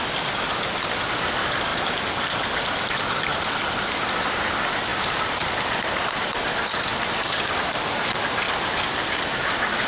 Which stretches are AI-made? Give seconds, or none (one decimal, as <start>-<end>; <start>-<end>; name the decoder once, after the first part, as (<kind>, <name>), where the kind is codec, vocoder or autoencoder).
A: 1.7-3.9 (vocoder, BigVGAN v2)